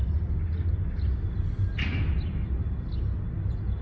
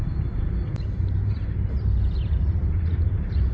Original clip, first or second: first